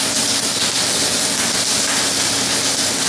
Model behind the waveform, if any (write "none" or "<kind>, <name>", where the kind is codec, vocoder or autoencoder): none